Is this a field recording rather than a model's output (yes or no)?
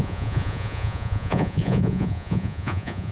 no